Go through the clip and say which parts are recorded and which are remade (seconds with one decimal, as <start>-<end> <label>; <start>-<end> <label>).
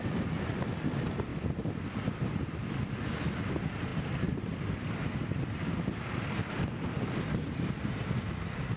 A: 0.0-1.3 recorded; 1.3-2.9 remade; 2.9-8.8 recorded